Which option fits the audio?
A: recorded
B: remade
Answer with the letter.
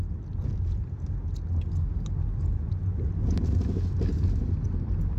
A